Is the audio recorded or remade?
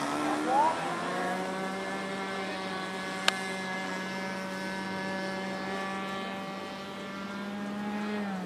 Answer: recorded